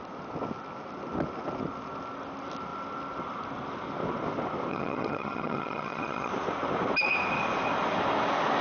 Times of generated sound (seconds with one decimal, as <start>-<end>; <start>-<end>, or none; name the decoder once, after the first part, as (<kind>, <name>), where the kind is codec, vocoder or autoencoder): 4.7-6.3 (vocoder, HiFi-GAN)